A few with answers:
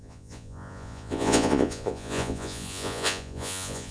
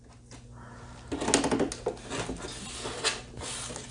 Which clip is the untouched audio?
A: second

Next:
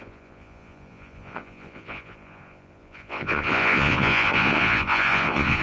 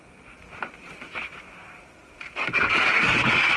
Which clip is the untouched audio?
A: second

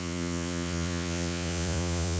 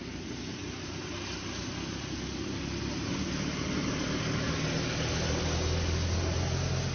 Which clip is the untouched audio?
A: second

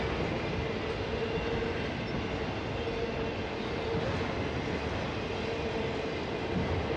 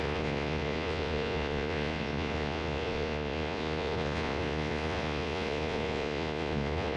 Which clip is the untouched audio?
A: first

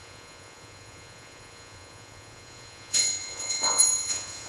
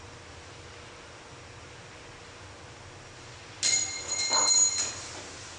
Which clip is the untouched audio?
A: second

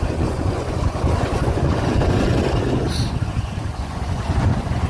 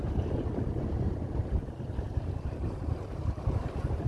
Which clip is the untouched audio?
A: second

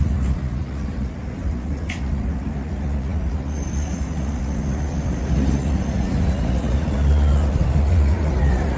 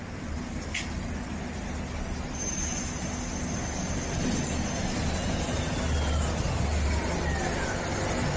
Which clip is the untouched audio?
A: second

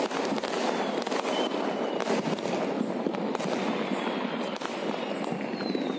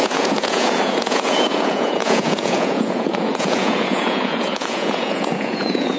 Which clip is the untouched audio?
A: first